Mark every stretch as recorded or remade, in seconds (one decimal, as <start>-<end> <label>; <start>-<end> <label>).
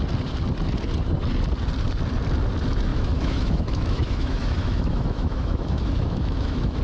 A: 0.0-2.9 recorded; 2.9-6.8 remade